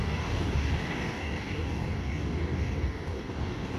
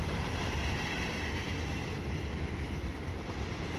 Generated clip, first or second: first